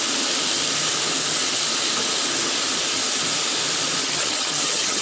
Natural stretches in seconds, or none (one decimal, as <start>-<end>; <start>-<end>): 0.0-4.0